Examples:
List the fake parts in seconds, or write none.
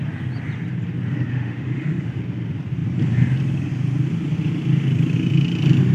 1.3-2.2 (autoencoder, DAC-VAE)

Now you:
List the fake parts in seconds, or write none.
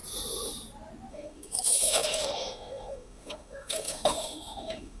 1.1-5.0 (autoencoder, DAC-VAE)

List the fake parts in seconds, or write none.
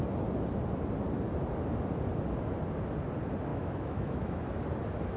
3.5-4.4 (autoencoder, DAC-VAE)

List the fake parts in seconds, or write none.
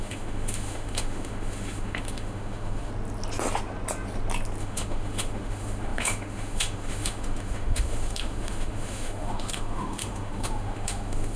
0.0-2.9 (autoencoder, DAC-VAE); 4.6-11.4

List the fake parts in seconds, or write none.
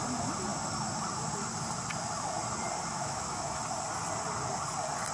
2.9-3.6 (autoencoder, DAC-VAE)